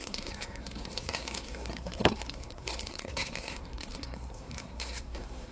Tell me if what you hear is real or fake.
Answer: fake